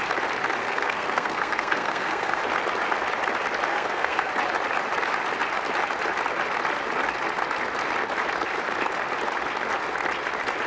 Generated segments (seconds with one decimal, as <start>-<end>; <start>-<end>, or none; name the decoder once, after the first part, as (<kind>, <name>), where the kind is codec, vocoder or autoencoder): 0.6-2.4 (codec, SNAC); 3.7-4.3